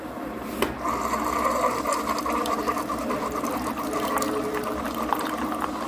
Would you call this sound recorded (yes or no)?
yes